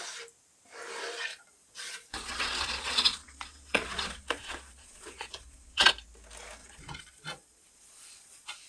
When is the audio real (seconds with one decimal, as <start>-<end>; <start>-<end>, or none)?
0.0-1.3; 5.9-6.6